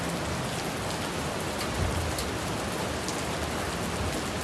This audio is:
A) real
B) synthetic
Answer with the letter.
A